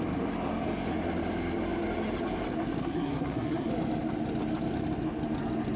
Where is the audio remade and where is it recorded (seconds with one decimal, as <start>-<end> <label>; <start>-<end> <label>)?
0.0-2.8 recorded; 2.8-3.7 remade; 3.7-5.8 recorded